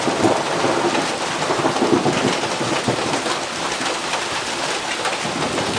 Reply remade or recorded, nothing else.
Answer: recorded